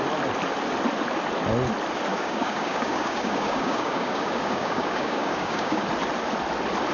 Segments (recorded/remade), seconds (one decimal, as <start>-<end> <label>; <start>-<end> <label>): 0.0-2.1 recorded; 2.1-5.8 remade; 5.8-6.9 recorded